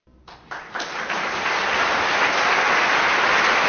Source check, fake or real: real